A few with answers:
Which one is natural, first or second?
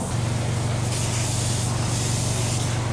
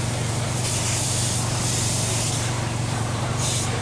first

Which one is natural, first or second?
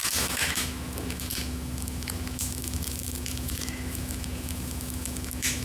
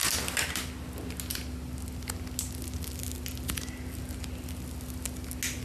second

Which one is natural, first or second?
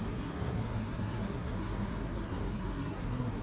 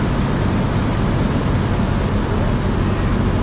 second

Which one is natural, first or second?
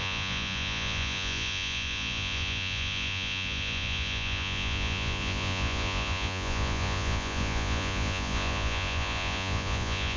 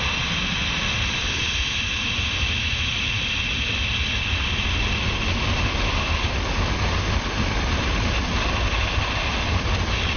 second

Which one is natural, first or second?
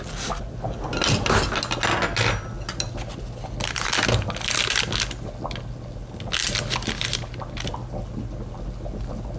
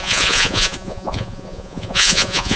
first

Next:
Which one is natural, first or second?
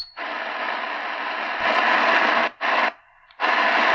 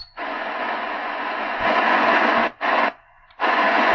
first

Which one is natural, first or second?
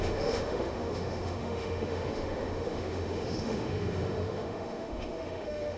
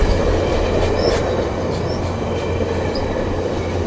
second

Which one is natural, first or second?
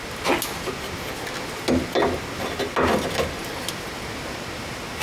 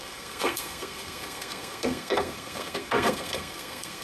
first